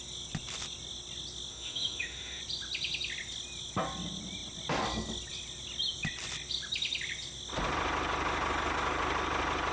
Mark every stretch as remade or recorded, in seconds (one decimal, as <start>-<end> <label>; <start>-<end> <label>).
0.0-1.5 recorded; 1.5-2.4 remade; 2.4-9.7 recorded